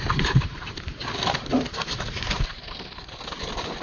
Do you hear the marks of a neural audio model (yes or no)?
yes